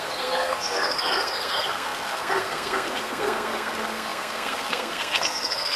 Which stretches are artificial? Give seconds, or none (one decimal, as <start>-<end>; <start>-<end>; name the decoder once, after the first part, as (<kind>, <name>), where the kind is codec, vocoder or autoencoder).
0.0-5.8 (codec, SNAC)